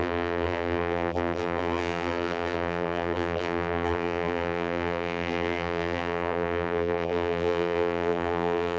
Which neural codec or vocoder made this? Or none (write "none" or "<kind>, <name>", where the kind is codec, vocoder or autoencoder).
vocoder, BigVGAN v2